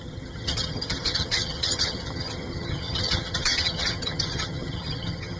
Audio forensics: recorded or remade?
remade